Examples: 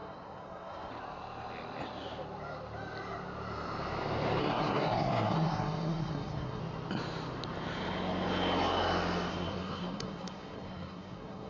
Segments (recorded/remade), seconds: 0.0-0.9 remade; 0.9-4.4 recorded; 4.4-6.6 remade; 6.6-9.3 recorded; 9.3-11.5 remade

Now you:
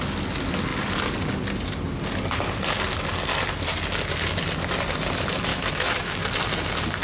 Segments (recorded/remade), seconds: 0.0-5.5 recorded; 5.5-6.2 remade; 6.2-7.0 recorded

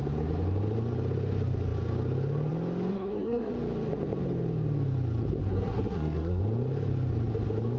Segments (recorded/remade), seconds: 0.0-2.9 recorded; 2.9-3.5 remade; 3.5-5.5 recorded; 5.5-6.4 remade; 6.4-7.8 recorded